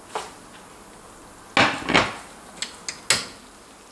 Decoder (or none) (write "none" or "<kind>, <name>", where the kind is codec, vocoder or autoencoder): none